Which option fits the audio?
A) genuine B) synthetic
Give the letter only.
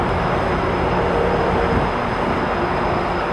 A